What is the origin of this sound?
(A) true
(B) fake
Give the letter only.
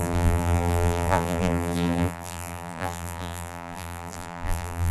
B